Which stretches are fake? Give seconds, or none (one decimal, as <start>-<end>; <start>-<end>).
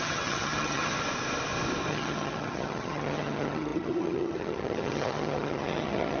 0.0-0.9; 1.9-6.2